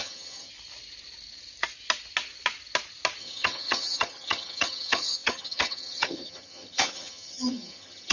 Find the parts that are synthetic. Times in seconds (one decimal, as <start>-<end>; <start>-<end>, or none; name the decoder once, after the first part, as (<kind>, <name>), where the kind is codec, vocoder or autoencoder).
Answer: 0.0-0.5 (vocoder, HiFi-GAN); 3.2-8.1